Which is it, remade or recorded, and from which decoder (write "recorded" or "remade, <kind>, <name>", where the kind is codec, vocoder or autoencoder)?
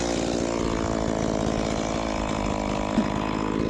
recorded